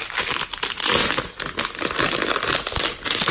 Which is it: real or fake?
real